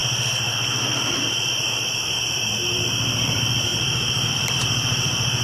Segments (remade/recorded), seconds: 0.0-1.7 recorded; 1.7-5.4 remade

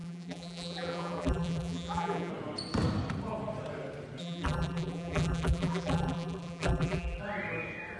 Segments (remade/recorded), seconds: 0.0-2.3 remade; 2.3-4.2 recorded; 4.2-7.2 remade; 7.2-8.0 recorded

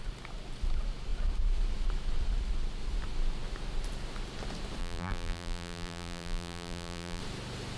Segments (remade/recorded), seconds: 0.0-4.8 recorded; 4.8-7.2 remade; 7.2-7.8 recorded